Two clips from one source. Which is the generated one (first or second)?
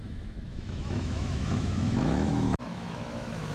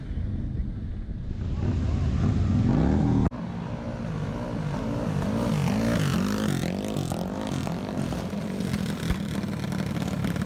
first